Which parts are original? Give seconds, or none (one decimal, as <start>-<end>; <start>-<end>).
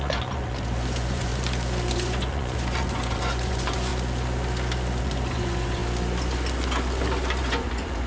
1.3-1.9; 3.9-5.0; 5.8-7.4